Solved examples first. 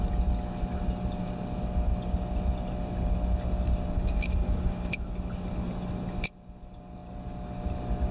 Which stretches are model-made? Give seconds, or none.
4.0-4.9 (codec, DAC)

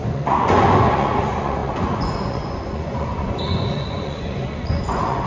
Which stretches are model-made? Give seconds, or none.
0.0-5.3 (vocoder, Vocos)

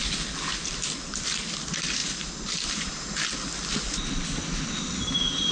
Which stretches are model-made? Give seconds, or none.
none

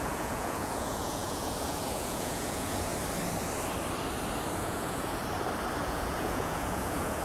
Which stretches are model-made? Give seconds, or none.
0.0-2.9 (vocoder, Vocos); 4.6-5.2; 5.8-7.2

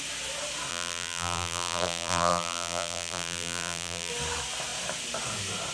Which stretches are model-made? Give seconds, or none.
0.7-4.1 (vocoder, BigVGAN v2)

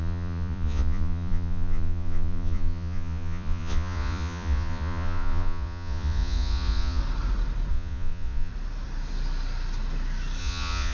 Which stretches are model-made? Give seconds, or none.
0.0-7.0 (vocoder, Vocos); 7.7-8.5; 10.4-10.9